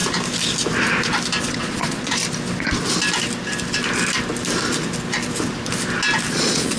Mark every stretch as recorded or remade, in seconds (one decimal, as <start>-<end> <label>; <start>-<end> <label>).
0.0-1.4 recorded; 1.4-2.2 remade; 2.2-6.3 recorded; 6.3-6.8 remade